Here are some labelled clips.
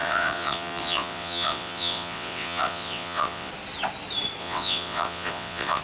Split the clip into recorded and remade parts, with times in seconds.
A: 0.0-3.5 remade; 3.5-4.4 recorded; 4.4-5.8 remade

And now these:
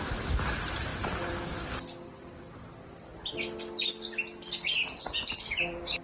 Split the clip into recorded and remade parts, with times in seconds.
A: 0.0-6.0 recorded

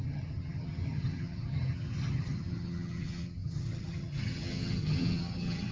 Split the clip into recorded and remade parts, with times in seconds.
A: 0.0-5.7 remade

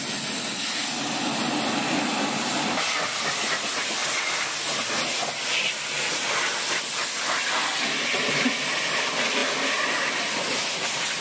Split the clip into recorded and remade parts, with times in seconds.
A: 0.0-11.2 recorded

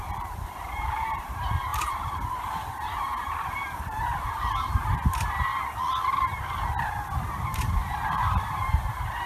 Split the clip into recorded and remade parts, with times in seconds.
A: 0.0-5.5 remade; 5.5-7.3 recorded; 7.3-9.3 remade

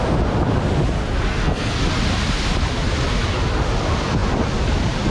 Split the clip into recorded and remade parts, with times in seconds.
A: 0.0-1.3 recorded; 1.3-1.8 remade; 1.8-5.1 recorded

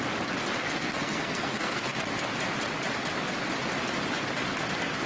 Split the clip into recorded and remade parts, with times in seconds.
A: 0.0-0.6 recorded; 0.6-2.1 remade; 2.1-5.1 recorded

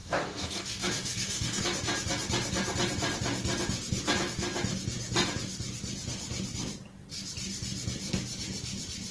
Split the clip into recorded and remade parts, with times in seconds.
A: 0.0-1.6 remade; 1.6-9.1 recorded